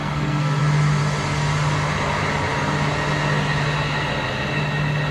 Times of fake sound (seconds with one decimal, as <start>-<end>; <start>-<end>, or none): 0.0-0.6